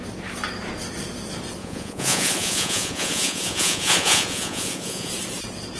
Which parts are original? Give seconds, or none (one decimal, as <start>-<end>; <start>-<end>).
0.0-1.6; 5.1-5.8